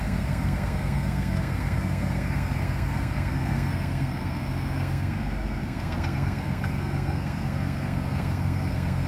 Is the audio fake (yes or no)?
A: yes